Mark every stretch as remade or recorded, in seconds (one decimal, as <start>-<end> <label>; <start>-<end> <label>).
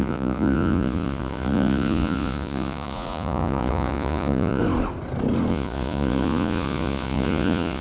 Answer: 0.0-4.6 remade; 4.6-5.5 recorded; 5.5-7.8 remade